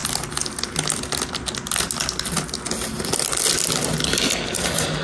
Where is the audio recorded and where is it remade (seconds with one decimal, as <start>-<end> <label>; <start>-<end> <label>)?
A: 0.0-5.0 recorded

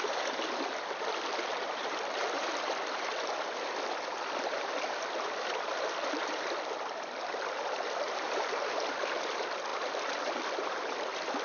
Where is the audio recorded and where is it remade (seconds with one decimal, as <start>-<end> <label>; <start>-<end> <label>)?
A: 0.0-11.4 remade

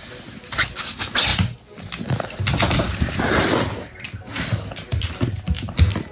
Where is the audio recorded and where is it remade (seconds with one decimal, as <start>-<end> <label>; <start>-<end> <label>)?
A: 0.0-6.1 recorded

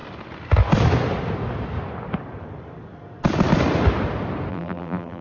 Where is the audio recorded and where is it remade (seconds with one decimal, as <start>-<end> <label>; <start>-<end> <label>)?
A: 0.0-4.5 recorded; 4.5-5.2 remade

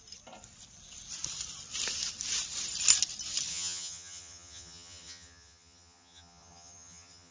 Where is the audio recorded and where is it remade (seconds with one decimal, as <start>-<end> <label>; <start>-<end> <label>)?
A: 0.0-3.5 recorded; 3.5-7.3 remade

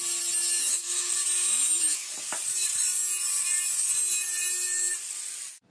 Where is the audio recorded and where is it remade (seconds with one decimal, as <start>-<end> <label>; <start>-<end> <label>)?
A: 0.0-0.6 recorded; 0.6-1.1 remade; 1.1-1.5 recorded; 1.5-2.1 remade; 2.1-5.7 recorded

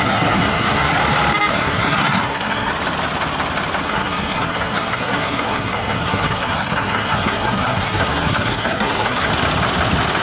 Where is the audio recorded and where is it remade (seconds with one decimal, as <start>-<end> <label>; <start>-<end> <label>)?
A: 0.0-1.0 remade; 1.0-1.5 recorded; 1.5-2.7 remade; 2.7-3.8 recorded; 3.8-9.3 remade; 9.3-10.2 recorded